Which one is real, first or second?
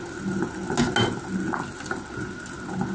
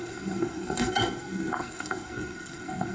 first